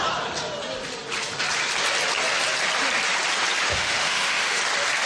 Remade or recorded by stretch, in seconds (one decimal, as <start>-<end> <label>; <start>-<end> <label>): 0.0-3.7 recorded; 3.7-4.6 remade; 4.6-5.1 recorded